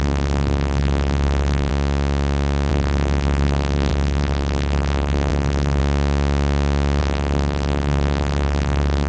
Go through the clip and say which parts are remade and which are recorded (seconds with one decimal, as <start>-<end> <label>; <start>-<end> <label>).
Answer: 0.0-1.7 remade; 1.7-2.7 recorded; 2.7-5.8 remade; 5.8-7.0 recorded; 7.0-9.1 remade